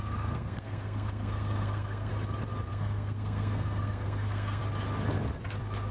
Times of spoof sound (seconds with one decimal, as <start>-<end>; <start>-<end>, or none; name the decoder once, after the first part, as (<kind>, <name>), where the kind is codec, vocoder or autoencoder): 0.0-2.1 (codec, SNAC); 2.7-4.6